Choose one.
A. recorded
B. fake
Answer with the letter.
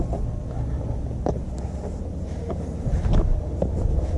A